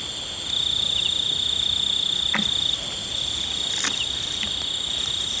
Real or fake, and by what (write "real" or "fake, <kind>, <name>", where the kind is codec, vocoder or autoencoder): real